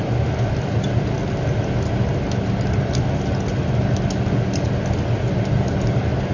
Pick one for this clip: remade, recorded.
recorded